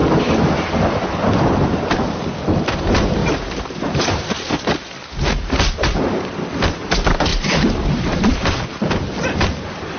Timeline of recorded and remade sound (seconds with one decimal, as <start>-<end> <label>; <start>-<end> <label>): 0.0-0.6 remade; 0.6-3.2 recorded; 3.2-4.3 remade; 4.3-7.3 recorded; 7.3-8.6 remade; 8.6-10.0 recorded